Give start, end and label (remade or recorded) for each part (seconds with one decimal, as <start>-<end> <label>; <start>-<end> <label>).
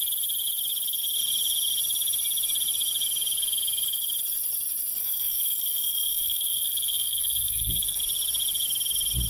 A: 0.0-5.0 recorded; 5.0-8.0 remade; 8.0-9.3 recorded